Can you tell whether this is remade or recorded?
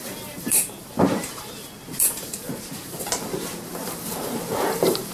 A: remade